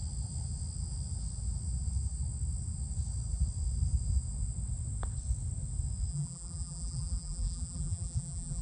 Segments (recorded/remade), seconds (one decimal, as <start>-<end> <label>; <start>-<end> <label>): 0.0-6.1 recorded; 6.1-8.6 remade

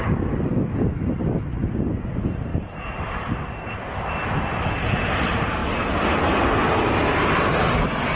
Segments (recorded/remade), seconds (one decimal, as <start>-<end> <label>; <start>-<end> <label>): 0.0-2.5 recorded; 2.5-3.5 remade; 3.5-8.2 recorded

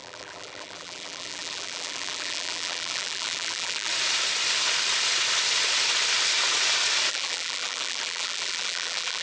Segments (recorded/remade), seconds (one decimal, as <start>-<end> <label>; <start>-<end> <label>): 0.0-3.9 remade; 3.9-7.1 recorded; 7.1-9.2 remade

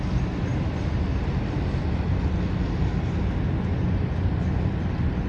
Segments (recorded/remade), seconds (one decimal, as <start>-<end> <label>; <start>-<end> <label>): 0.0-0.5 remade; 0.5-3.7 recorded; 3.7-5.3 remade

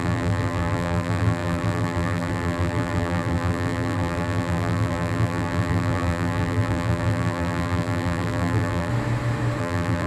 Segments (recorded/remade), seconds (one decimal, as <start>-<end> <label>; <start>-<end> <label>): 0.0-8.9 remade; 8.9-9.6 recorded; 9.6-10.1 remade

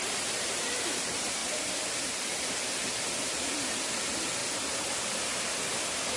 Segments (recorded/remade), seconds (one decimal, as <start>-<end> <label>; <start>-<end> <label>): 0.0-1.4 remade; 1.4-3.0 recorded; 3.0-4.4 remade; 4.4-6.2 recorded

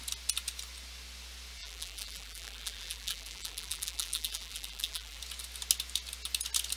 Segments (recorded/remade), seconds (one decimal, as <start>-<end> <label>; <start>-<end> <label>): 0.0-1.6 recorded; 1.6-5.2 remade; 5.2-6.8 recorded